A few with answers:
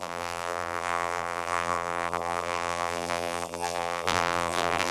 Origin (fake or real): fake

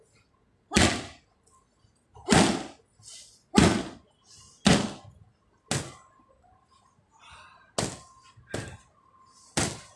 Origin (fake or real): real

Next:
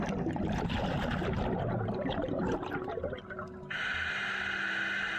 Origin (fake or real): real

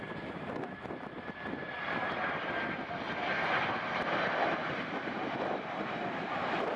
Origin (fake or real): real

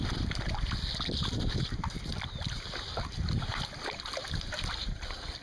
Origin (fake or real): real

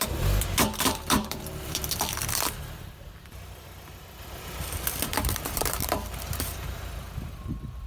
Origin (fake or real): fake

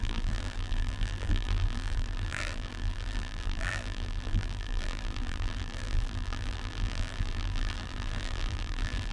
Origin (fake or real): fake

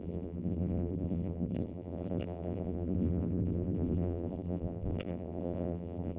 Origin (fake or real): fake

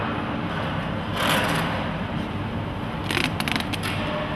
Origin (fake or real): real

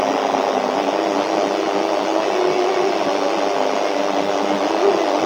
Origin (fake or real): real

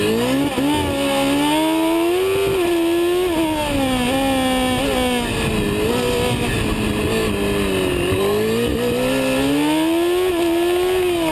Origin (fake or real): real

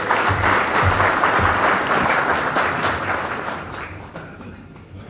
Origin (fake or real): fake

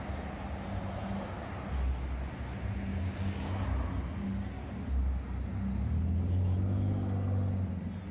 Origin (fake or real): real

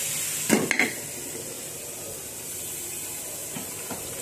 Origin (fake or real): real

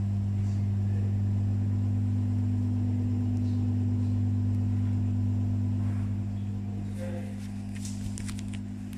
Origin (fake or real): real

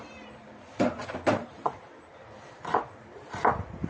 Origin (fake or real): fake